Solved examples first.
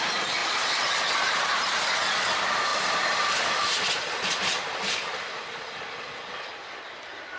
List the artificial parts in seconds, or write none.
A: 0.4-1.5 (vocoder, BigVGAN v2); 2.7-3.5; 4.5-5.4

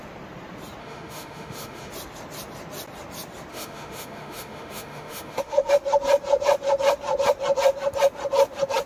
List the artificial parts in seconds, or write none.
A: 0.8-1.9 (autoencoder, DAC-VAE); 3.5-5.7

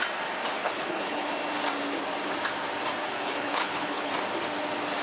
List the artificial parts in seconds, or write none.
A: 0.6-1.3 (codec, HILCodec); 3.0-4.1

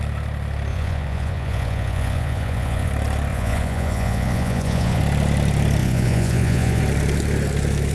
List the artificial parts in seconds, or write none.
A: 0.7-2.9 (vocoder, Vocos); 3.3-5.0; 5.8-6.8

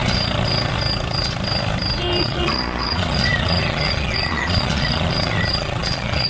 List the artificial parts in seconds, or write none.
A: 2.2-6.3 (vocoder, Vocos)

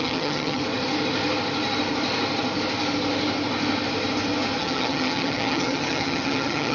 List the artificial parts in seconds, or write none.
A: 0.0-0.6 (vocoder, HiFi-GAN); 4.6-6.7